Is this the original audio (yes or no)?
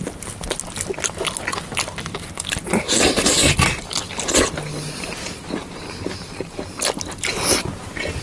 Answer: yes